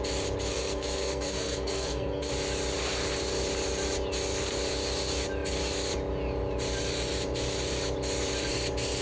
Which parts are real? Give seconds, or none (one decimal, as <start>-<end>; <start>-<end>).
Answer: 0.0-0.5; 2.3-9.0